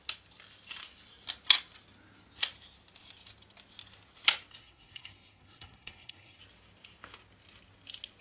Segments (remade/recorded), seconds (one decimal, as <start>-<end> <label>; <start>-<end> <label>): 0.0-4.6 recorded; 4.6-6.4 remade; 6.4-8.2 recorded